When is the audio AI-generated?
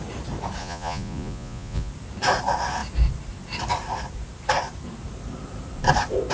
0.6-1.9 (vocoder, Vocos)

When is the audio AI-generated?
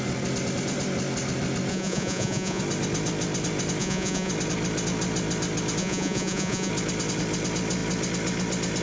1.7-2.6 (vocoder, Vocos); 3.8-4.3; 5.8-6.7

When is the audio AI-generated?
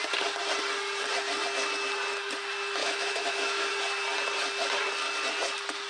2.8-3.7 (autoencoder, DAC-VAE)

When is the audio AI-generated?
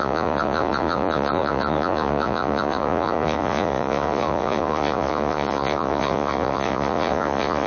0.0-7.7 (vocoder, Vocos)